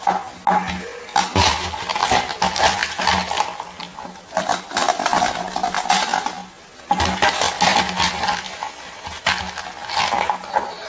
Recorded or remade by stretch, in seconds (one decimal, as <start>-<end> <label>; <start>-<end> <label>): 0.0-10.9 recorded